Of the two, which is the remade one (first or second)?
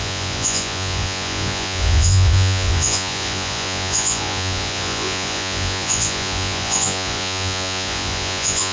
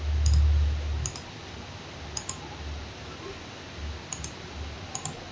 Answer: first